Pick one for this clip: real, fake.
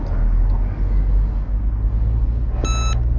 real